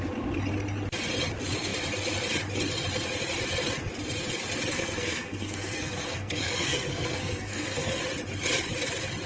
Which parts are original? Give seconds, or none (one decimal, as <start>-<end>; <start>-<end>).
0.0-4.7; 8.0-9.3